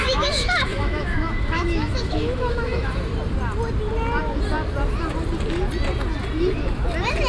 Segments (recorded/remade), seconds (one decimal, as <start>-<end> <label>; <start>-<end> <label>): 0.0-3.1 remade; 3.1-7.3 recorded